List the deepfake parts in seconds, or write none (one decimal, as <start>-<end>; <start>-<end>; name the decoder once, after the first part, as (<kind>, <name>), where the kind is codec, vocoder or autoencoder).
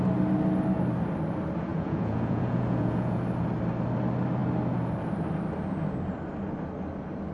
1.7-3.2 (vocoder, Vocos)